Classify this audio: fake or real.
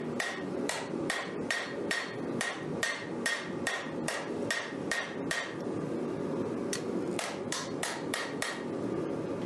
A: real